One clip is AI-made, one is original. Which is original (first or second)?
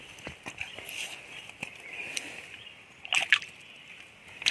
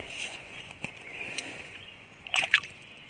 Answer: first